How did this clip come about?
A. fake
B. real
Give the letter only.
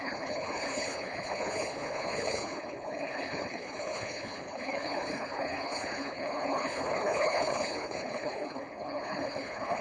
A